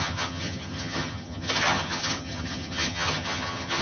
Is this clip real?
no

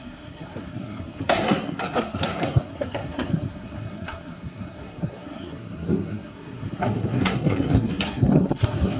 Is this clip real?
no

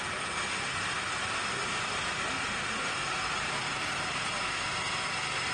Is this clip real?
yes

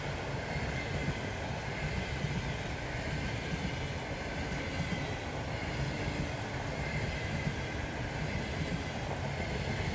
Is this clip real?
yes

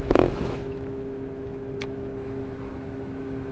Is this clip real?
no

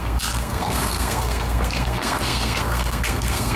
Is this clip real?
no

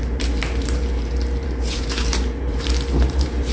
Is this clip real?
no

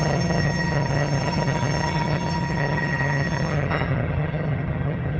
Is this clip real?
no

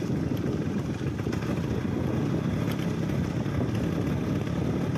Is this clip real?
yes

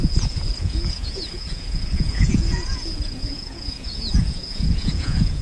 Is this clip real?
no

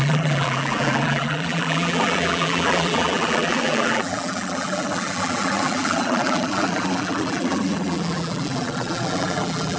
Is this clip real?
no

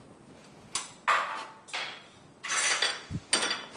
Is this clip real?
yes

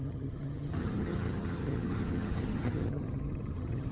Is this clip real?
no